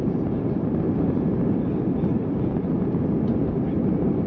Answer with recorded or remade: recorded